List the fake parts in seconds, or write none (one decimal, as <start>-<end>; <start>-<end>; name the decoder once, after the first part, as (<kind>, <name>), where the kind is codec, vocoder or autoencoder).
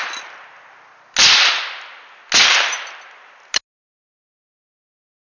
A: none